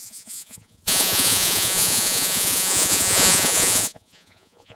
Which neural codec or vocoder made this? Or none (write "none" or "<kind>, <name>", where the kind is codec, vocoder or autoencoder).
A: vocoder, Vocos